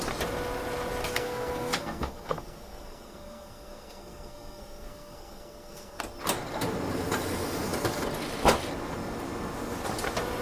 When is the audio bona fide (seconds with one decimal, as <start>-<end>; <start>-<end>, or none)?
0.0-1.0; 6.0-10.4